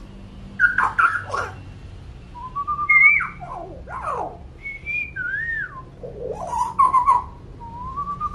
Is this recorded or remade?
recorded